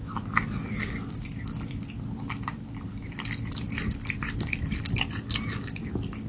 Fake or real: real